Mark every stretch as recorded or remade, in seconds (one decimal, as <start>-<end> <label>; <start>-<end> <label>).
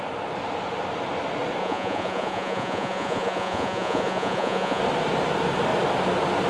0.0-1.6 recorded; 1.6-4.8 remade; 4.8-6.5 recorded